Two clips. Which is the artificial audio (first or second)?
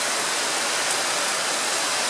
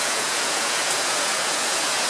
second